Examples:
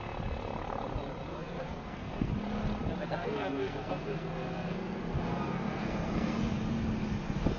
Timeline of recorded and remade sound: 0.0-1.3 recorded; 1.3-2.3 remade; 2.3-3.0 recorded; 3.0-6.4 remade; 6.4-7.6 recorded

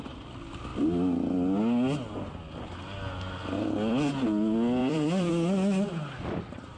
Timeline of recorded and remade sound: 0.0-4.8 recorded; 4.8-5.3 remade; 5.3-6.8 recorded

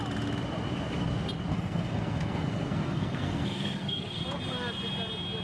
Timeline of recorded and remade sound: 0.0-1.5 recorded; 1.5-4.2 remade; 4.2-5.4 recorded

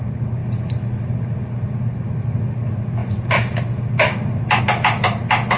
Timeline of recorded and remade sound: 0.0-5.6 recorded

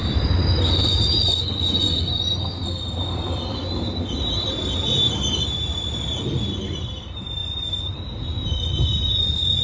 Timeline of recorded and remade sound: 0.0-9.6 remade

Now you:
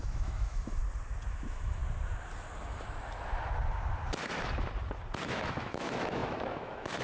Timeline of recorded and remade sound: 0.0-0.8 remade; 0.8-1.3 recorded; 1.3-1.8 remade; 1.8-5.2 recorded; 5.2-7.0 remade

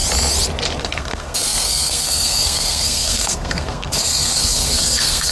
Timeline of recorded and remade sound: 0.0-0.8 recorded; 0.8-5.3 remade

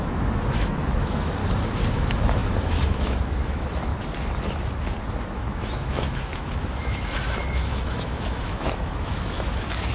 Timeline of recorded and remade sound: 0.0-1.4 remade; 1.4-1.9 recorded; 1.9-3.9 remade; 3.9-5.1 recorded; 5.1-9.9 remade